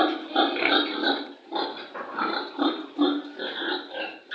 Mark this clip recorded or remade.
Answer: recorded